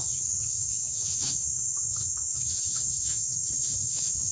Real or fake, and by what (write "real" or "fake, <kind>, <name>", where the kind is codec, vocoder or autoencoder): fake, autoencoder, DAC-VAE